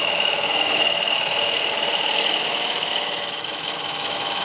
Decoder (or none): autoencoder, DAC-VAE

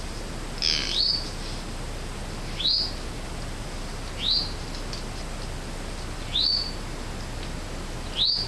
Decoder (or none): none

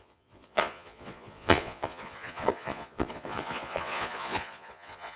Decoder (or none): vocoder, Vocos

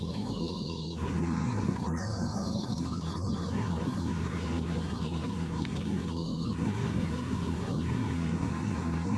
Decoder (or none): codec, SNAC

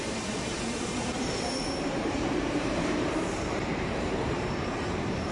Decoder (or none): vocoder, BigVGAN v2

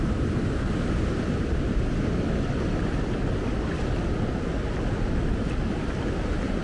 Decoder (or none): none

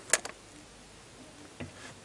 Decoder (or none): none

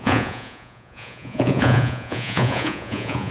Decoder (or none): vocoder, Vocos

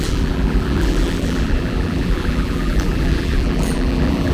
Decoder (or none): vocoder, BigVGAN v2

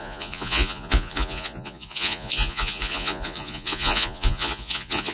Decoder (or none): vocoder, Vocos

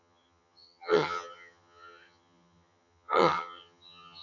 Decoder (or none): vocoder, HiFi-GAN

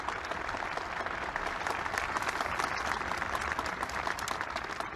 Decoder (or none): none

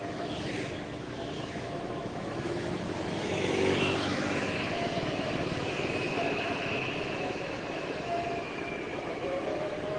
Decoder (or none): autoencoder, DAC-VAE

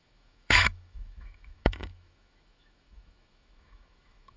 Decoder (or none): autoencoder, DAC-VAE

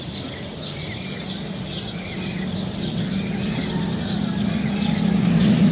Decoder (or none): none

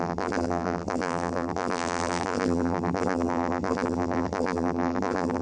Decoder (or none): vocoder, BigVGAN v2